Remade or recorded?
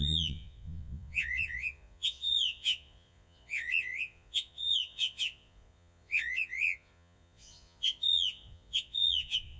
remade